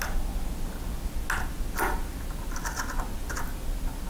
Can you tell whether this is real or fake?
real